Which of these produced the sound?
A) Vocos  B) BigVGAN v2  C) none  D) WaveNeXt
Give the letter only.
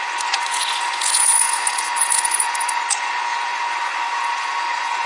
A